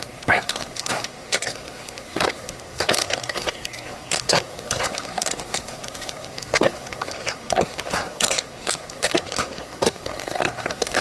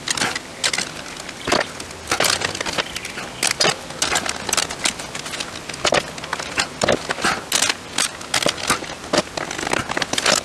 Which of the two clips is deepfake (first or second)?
first